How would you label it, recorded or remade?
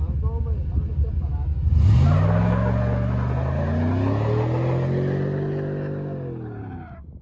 recorded